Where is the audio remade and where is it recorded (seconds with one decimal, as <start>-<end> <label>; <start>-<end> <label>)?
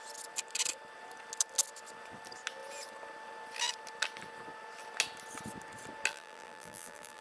0.0-6.1 recorded; 6.1-7.2 remade